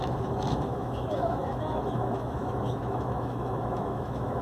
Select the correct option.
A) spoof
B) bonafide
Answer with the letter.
A